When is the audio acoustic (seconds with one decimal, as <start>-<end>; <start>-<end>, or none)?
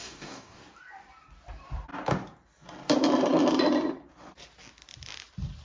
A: 0.6-5.6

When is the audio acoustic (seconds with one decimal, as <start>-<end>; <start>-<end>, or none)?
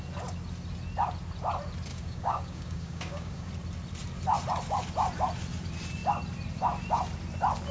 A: 0.0-1.9; 3.5-7.7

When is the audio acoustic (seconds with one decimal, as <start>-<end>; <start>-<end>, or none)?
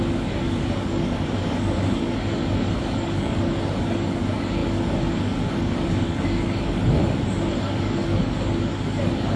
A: 7.0-7.5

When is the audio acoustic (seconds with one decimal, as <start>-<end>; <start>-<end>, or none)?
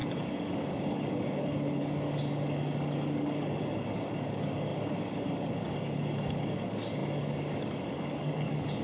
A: none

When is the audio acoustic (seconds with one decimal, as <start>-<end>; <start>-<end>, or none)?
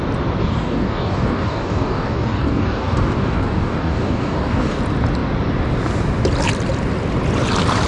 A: 0.0-0.4; 4.8-7.9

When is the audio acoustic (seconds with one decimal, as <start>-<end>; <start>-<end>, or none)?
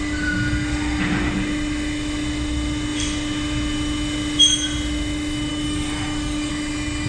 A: 0.0-5.5; 6.5-7.1